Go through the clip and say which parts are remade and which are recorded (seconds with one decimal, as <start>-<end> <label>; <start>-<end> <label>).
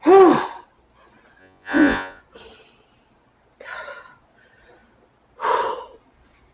0.0-1.4 recorded; 1.4-2.2 remade; 2.2-6.5 recorded